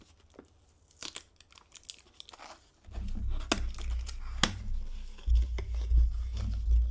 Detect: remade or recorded recorded